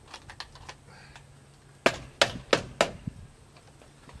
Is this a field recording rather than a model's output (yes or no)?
yes